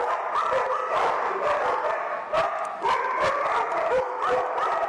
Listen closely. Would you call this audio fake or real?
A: fake